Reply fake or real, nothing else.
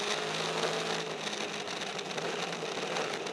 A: real